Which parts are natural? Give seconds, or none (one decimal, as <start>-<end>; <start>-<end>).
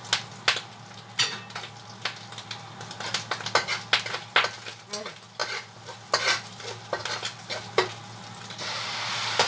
0.0-9.5